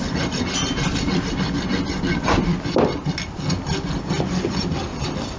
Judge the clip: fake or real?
real